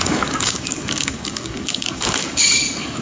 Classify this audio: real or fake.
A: fake